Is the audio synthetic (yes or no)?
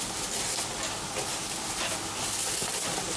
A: no